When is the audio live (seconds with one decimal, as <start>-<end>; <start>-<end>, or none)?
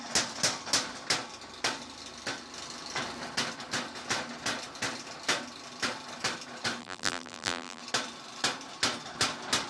0.0-6.8; 7.8-9.7